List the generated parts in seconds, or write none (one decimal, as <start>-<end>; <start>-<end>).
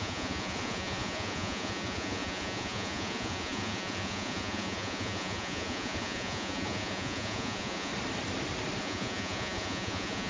0.0-7.9; 8.8-10.3